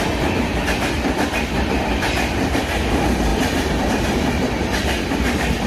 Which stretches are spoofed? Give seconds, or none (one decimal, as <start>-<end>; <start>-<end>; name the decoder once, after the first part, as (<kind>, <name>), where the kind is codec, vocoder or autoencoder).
0.0-5.7 (vocoder, BigVGAN v2)